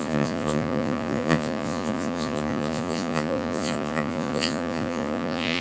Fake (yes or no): yes